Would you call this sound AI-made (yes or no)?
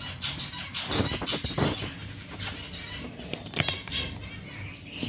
no